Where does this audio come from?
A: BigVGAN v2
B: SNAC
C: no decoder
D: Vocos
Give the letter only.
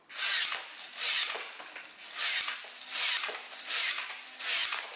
C